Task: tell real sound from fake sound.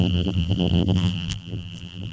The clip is fake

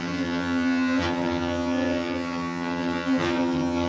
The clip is fake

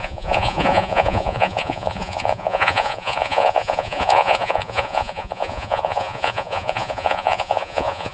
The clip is fake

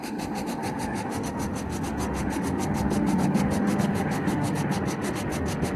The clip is fake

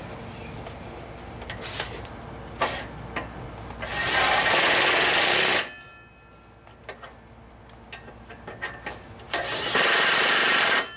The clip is real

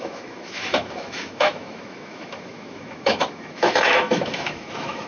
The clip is fake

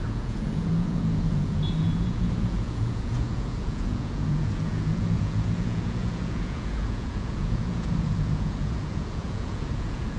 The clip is fake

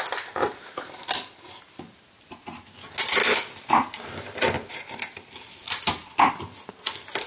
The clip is real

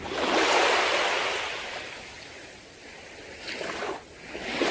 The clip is real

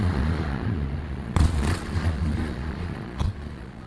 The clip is fake